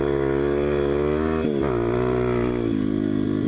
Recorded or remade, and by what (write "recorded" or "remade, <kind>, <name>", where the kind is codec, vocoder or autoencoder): recorded